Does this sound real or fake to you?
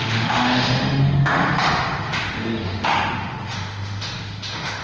fake